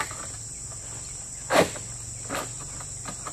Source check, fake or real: real